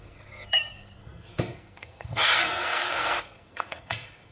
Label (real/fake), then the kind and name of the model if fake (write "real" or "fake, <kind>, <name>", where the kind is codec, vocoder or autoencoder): fake, codec, SNAC